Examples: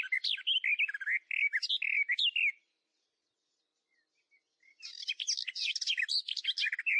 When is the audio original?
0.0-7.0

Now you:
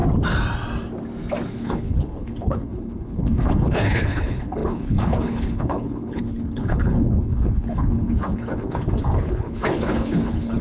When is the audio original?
0.0-1.5